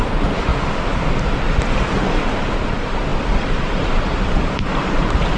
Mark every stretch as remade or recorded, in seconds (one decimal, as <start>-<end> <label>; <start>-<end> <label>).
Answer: 0.0-0.5 remade; 0.5-1.8 recorded; 1.8-5.4 remade

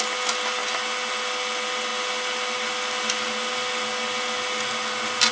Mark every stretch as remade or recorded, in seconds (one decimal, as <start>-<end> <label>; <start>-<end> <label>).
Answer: 0.0-5.3 recorded

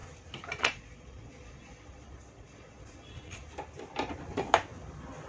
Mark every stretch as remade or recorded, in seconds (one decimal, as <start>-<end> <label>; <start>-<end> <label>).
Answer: 0.0-0.6 recorded; 0.6-3.4 remade; 3.4-5.3 recorded

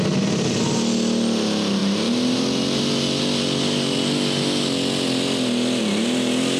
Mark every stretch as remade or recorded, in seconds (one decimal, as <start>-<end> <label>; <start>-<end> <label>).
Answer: 0.0-6.6 recorded